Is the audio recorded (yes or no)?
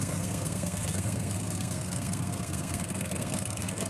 no